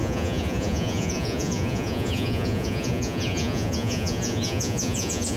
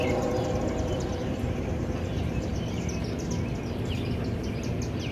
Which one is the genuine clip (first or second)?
second